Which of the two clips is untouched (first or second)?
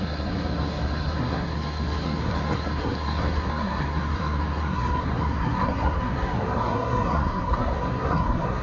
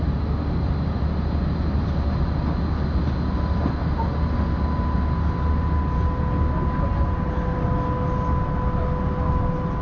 second